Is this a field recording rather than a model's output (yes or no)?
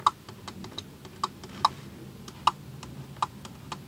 yes